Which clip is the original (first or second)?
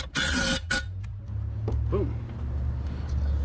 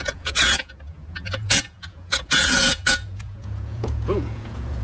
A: first